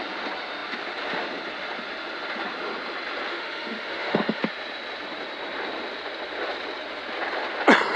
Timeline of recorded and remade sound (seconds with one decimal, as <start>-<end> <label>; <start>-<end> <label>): 0.0-3.3 recorded; 3.3-4.4 remade; 4.4-8.0 recorded